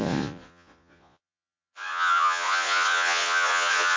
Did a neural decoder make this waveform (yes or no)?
yes